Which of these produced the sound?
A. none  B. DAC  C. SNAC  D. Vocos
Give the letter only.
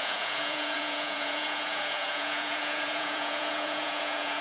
D